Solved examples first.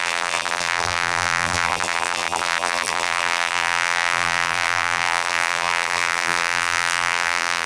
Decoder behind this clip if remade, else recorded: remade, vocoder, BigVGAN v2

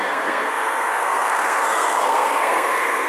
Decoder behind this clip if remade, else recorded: remade, codec, SNAC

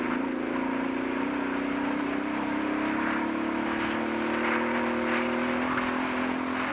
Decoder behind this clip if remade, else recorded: recorded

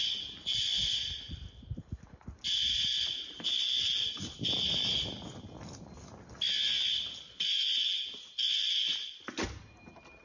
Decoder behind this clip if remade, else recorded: recorded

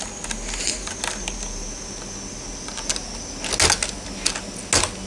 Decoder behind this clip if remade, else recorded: recorded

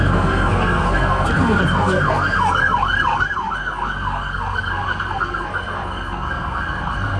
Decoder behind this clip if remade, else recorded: remade, codec, SNAC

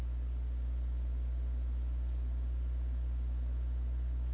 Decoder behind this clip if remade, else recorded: recorded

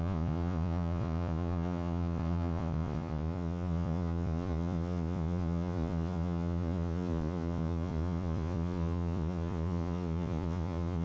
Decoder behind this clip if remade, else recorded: remade, vocoder, Vocos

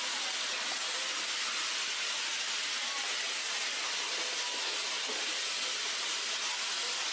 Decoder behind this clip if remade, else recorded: recorded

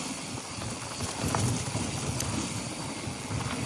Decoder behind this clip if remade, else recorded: recorded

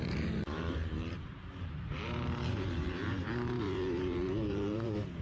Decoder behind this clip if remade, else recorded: remade, vocoder, BigVGAN v2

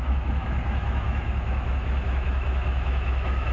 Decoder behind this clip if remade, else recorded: remade, autoencoder, DAC-VAE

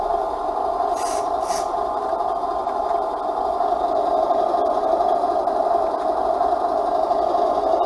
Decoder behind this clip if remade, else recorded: recorded